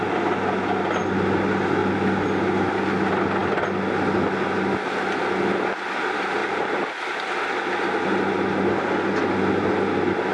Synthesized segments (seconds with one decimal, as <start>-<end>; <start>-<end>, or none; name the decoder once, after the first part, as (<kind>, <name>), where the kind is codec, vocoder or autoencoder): none